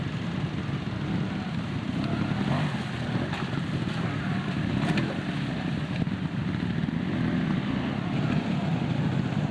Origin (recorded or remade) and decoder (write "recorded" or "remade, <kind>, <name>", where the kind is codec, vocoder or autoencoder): recorded